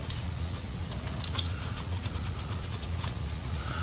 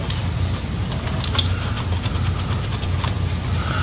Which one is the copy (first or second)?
first